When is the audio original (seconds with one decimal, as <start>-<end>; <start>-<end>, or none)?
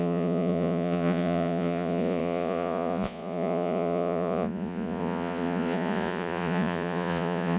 none